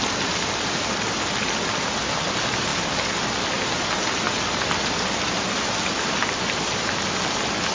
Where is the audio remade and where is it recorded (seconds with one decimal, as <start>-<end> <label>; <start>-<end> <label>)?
0.0-7.7 recorded